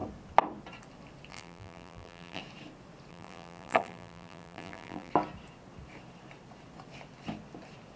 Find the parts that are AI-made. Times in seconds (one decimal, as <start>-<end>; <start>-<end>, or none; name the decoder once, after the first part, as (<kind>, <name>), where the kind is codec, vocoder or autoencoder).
1.3-2.4 (vocoder, BigVGAN v2); 3.1-5.1